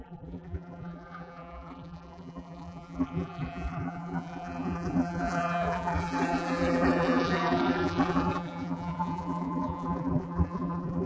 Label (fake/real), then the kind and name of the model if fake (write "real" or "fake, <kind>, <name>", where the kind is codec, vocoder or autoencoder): fake, vocoder, BigVGAN v2